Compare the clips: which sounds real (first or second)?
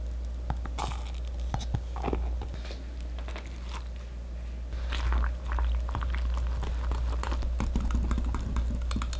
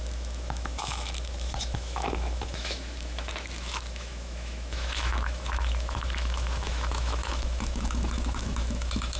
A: first